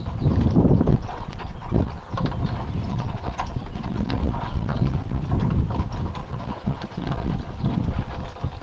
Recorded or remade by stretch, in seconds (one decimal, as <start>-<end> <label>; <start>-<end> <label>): 0.0-0.9 recorded; 0.9-1.9 remade; 1.9-2.9 recorded; 2.9-5.2 remade; 5.2-6.2 recorded; 6.2-7.3 remade; 7.3-8.6 recorded